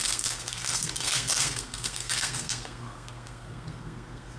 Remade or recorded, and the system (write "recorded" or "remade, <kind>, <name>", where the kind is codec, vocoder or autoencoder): remade, codec, SNAC